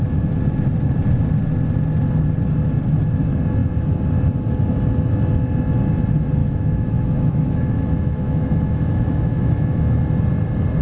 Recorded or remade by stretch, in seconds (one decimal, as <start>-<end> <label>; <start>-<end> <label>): 0.0-6.4 recorded; 6.4-10.0 remade; 10.0-10.8 recorded

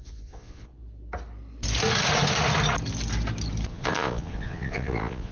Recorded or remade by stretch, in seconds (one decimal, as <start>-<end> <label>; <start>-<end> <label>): 0.0-0.8 remade; 0.8-3.7 recorded; 3.7-5.3 remade

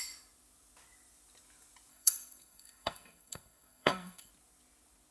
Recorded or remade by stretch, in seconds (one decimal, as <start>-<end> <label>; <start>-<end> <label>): 0.0-1.9 recorded; 1.9-4.3 remade; 4.3-5.1 recorded

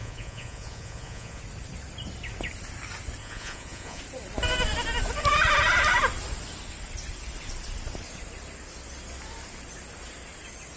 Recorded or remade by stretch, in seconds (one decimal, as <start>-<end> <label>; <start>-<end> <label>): 0.0-1.4 remade; 1.4-3.2 recorded; 3.2-4.0 remade; 4.0-10.8 recorded

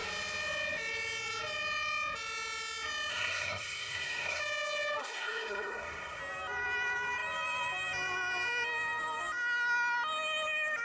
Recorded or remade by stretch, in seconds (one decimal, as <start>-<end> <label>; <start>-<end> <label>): 0.0-3.1 recorded; 3.1-4.4 remade; 4.4-5.0 recorded; 5.0-6.2 remade; 6.2-10.8 recorded

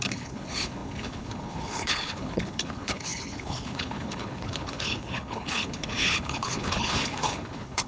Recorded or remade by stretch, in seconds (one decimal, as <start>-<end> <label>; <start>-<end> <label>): 0.0-7.9 remade

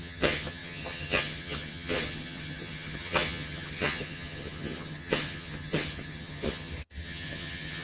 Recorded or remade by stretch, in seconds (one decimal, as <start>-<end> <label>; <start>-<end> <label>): 0.0-7.8 remade